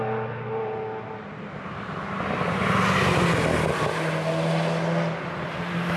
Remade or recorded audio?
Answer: recorded